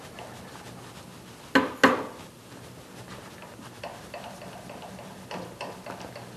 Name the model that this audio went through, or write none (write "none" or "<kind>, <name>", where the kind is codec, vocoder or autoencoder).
none